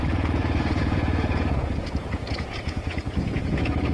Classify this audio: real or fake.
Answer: fake